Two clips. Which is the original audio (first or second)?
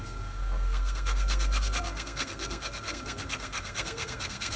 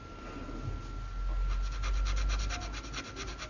second